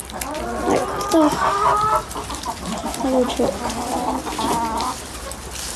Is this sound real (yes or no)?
yes